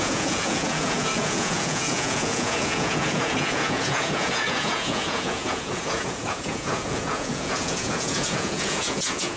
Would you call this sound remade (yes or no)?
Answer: yes